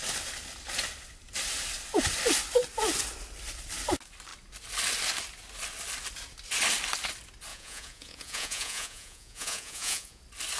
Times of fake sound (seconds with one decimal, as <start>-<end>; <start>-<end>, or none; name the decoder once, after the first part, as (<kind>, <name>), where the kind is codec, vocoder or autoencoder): 7.5-10.2 (vocoder, Vocos)